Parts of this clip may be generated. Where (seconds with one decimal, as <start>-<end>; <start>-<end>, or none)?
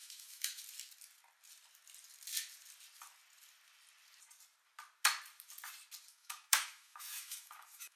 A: 0.0-0.6; 6.1-8.0